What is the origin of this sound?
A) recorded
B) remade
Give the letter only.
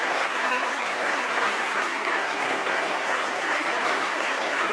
B